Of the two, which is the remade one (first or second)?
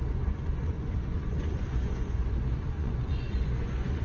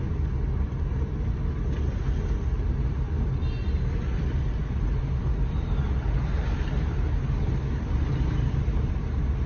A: first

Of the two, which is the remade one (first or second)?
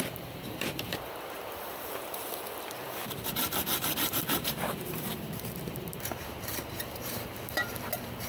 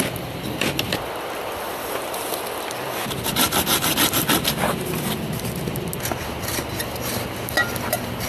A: first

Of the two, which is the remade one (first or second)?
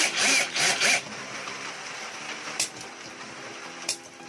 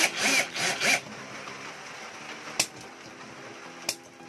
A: first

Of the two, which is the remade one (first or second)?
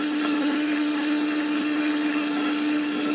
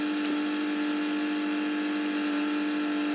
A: first